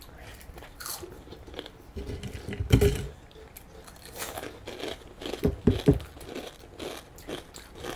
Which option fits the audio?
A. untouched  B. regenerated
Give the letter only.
A